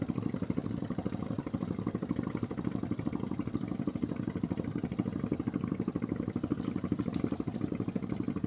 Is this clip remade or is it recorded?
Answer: recorded